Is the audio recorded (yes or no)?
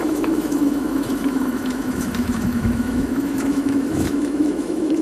no